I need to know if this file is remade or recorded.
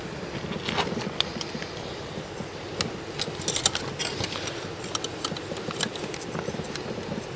recorded